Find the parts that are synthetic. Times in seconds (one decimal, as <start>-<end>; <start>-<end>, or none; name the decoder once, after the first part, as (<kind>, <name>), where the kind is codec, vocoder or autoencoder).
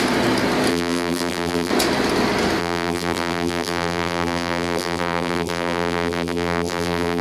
0.7-1.7 (vocoder, BigVGAN v2); 2.6-7.2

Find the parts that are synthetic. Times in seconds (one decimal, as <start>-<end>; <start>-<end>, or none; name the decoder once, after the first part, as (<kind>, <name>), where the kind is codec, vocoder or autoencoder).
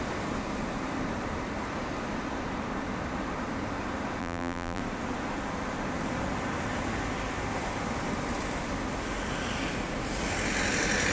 4.2-4.8 (vocoder, BigVGAN v2)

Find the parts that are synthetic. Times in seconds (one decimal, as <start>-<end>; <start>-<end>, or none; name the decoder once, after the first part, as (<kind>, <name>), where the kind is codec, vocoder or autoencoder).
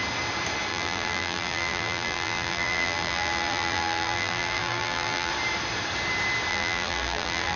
0.7-5.3 (vocoder, BigVGAN v2); 6.5-7.6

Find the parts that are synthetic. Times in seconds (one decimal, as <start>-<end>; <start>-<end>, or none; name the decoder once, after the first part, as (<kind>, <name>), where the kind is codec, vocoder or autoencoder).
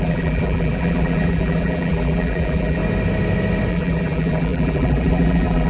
0.0-2.8 (vocoder, BigVGAN v2); 3.7-5.7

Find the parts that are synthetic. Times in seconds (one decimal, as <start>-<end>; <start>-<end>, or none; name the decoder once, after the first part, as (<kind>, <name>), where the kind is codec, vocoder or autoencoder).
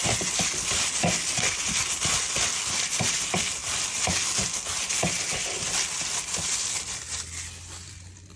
none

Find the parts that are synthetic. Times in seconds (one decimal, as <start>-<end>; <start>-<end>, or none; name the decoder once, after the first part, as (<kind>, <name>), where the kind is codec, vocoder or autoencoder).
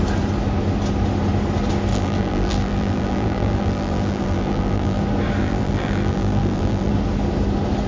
1.9-5.0 (vocoder, BigVGAN v2); 5.4-6.9